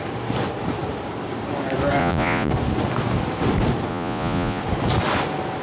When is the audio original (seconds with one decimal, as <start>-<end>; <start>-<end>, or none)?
0.0-2.0; 2.5-3.9; 4.6-5.6